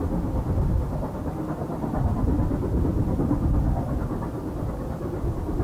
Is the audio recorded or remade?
recorded